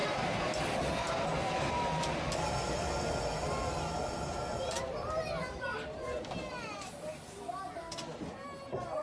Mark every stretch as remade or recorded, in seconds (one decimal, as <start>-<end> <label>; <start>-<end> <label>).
0.0-5.4 recorded; 5.4-7.4 remade; 7.4-9.0 recorded